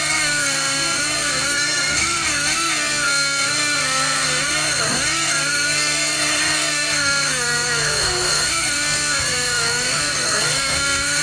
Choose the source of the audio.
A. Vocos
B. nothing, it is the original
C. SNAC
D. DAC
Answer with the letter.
C